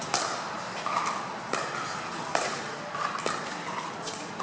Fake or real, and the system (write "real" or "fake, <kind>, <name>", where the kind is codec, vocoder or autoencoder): real